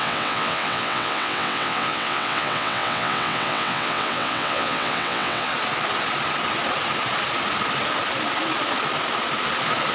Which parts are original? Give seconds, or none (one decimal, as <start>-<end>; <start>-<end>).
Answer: 5.5-9.9